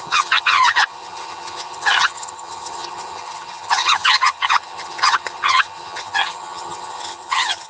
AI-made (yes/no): yes